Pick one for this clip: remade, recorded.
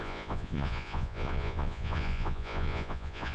remade